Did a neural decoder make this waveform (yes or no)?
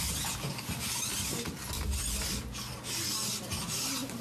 no